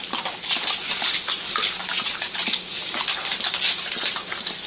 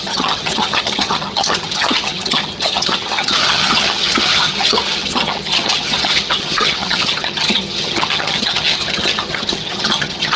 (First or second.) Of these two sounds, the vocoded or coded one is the second